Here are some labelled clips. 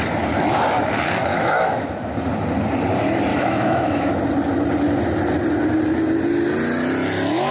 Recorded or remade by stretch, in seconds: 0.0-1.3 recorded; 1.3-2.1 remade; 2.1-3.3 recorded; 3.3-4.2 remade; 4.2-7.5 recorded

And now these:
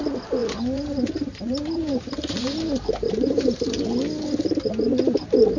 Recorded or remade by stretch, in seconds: 0.0-0.4 recorded; 0.4-3.8 remade; 3.8-5.6 recorded

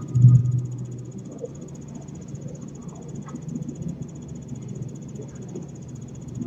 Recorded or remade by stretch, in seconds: 0.0-6.5 recorded

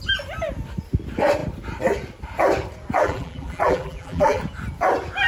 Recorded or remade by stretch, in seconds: 0.0-3.0 recorded; 3.0-4.4 remade; 4.4-5.3 recorded